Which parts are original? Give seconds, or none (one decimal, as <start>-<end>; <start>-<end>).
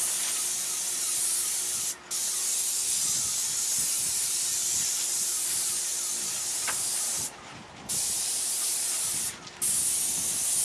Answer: 0.0-6.5; 9.1-10.6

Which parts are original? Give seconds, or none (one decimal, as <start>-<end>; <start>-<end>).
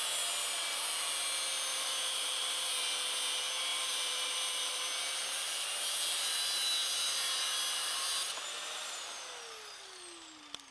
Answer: 0.0-1.7; 2.7-3.7; 4.8-10.7